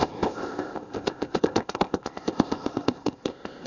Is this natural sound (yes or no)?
no